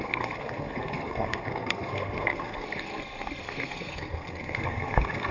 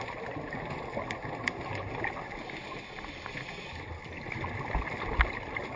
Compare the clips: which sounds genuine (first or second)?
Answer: second